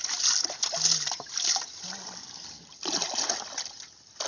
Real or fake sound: real